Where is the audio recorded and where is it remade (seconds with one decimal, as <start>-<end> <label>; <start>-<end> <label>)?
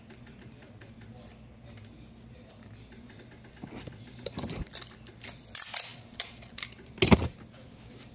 0.0-5.9 recorded; 5.9-6.7 remade; 6.7-8.1 recorded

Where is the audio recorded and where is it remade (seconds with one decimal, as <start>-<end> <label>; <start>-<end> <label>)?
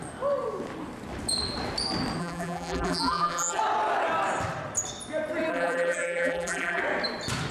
0.0-2.2 recorded; 2.2-3.6 remade; 3.6-5.5 recorded; 5.5-6.8 remade; 6.8-7.5 recorded